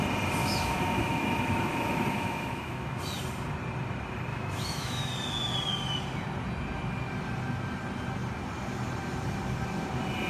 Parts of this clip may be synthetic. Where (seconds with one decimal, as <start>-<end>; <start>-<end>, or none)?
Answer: 0.4-3.0; 4.3-5.1